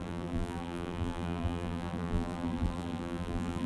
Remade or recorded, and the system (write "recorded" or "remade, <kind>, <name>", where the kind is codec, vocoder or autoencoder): remade, vocoder, BigVGAN v2